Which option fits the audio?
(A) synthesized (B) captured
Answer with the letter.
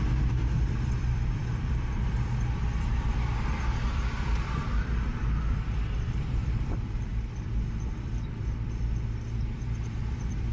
A